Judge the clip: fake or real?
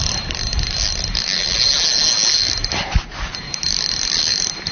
real